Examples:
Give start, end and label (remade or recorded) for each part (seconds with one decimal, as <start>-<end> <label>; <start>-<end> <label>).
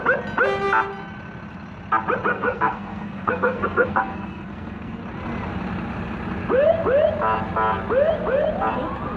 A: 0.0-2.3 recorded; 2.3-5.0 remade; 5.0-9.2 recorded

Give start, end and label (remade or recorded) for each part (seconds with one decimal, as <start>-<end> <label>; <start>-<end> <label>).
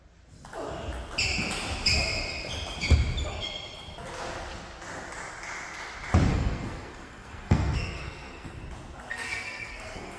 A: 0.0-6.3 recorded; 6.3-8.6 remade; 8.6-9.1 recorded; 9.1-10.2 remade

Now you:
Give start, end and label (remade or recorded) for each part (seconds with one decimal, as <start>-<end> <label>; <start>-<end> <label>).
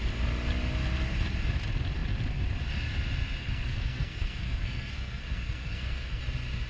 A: 0.0-3.4 recorded; 3.4-6.2 remade; 6.2-6.7 recorded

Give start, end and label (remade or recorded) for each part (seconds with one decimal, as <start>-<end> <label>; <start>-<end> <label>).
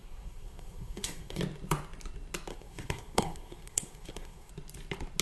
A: 0.0-1.4 remade; 1.4-2.5 recorded; 2.5-4.5 remade; 4.5-5.2 recorded